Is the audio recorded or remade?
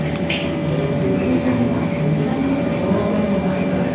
recorded